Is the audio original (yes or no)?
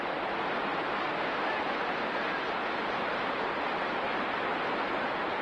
yes